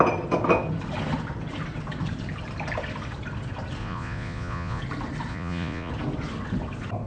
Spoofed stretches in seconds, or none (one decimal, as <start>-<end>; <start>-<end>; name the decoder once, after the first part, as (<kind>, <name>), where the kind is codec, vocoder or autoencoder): 3.8-4.8 (vocoder, Vocos); 5.3-5.9